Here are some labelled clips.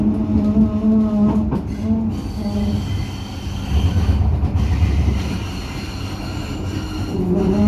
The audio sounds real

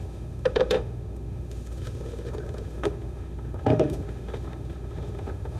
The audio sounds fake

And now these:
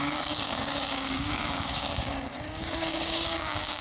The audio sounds fake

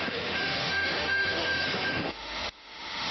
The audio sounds fake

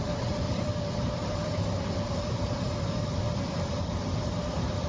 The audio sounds fake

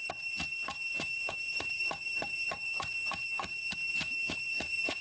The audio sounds fake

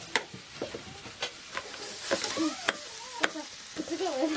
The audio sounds real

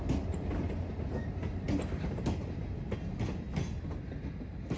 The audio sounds real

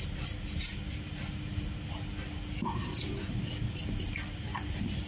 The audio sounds real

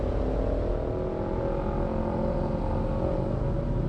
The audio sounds real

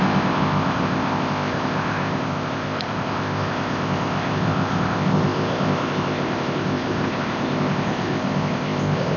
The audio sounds fake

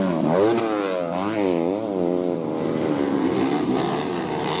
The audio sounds real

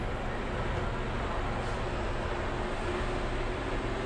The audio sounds real